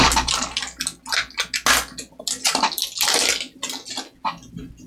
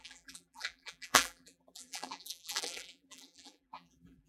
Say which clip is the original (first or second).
first